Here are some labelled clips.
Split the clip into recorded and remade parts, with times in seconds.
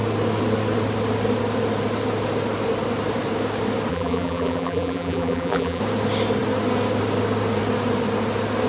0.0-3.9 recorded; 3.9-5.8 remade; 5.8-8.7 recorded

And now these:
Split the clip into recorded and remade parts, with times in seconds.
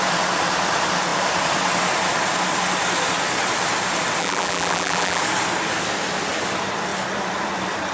0.0-4.2 recorded; 4.2-5.2 remade; 5.2-7.9 recorded